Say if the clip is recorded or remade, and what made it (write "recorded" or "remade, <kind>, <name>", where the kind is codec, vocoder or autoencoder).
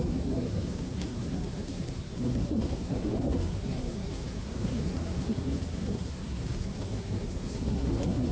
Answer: remade, codec, SNAC